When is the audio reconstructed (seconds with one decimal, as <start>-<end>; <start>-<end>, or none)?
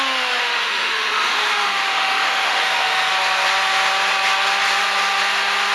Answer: 0.4-3.1